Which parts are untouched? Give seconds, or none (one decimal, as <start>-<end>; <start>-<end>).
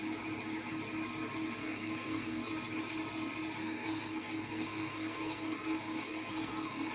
0.0-1.6; 2.5-3.6